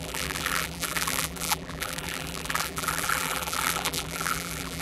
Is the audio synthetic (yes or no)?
yes